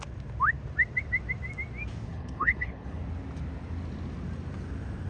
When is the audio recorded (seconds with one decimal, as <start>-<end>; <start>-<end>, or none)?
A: 0.0-2.1; 3.0-5.1